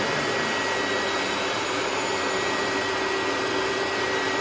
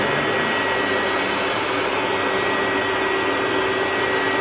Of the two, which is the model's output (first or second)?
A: first